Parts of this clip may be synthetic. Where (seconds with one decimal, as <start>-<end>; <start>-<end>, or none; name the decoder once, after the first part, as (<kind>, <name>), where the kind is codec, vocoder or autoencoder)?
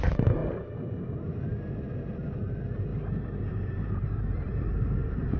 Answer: 2.9-5.4 (vocoder, BigVGAN v2)